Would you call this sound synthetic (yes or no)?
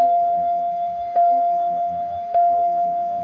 yes